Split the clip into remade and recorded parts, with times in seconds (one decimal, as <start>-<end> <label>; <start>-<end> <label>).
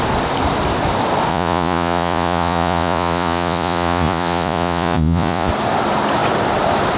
0.0-1.3 recorded; 1.3-5.5 remade; 5.5-7.0 recorded